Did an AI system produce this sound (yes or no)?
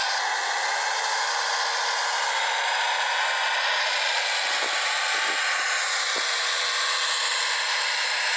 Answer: no